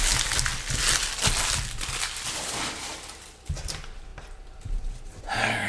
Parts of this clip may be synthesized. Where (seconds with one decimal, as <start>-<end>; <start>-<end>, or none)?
none